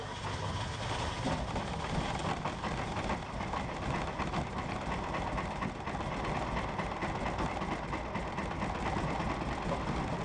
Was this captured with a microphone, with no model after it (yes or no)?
yes